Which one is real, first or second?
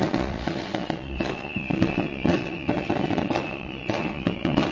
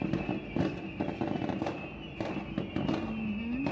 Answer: second